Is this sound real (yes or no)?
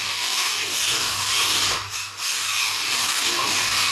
no